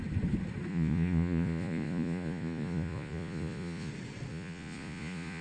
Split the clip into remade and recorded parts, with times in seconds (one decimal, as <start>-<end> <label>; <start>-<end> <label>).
0.0-0.7 recorded; 0.7-3.9 remade; 3.9-4.3 recorded; 4.3-5.4 remade